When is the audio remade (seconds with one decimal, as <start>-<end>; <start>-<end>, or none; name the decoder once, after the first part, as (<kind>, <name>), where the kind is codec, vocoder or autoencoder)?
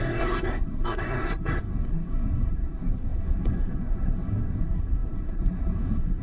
0.0-6.2 (codec, SNAC)